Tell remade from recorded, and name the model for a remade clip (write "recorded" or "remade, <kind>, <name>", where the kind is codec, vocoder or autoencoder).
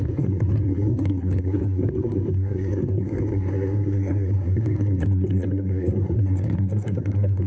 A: remade, codec, SNAC